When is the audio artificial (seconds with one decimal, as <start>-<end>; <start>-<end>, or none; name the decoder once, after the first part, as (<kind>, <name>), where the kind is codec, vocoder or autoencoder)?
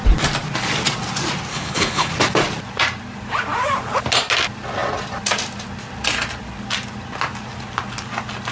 1.5-2.1 (codec, HILCodec)